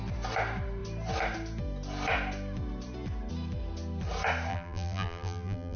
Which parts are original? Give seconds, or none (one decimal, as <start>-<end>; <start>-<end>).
0.0-4.5